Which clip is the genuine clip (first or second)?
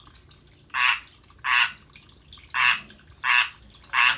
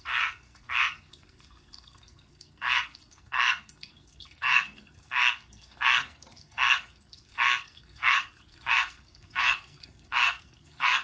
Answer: first